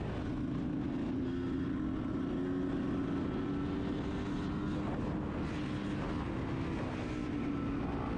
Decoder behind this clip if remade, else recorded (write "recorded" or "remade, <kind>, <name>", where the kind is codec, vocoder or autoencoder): recorded